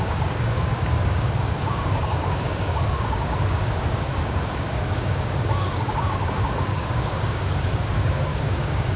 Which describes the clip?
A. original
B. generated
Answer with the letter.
B